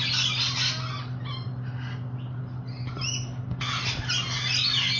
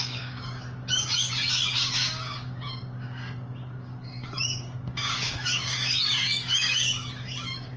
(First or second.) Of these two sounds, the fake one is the second